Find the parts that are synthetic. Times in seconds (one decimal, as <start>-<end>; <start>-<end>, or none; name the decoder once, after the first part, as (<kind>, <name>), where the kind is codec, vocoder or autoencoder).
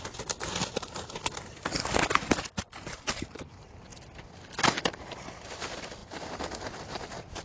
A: 0.6-1.3 (vocoder, BigVGAN v2); 1.8-3.7